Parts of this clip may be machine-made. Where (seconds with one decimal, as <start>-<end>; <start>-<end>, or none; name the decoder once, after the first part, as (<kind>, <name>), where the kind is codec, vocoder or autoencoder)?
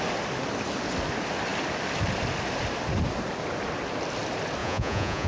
4.6-5.3 (vocoder, Vocos)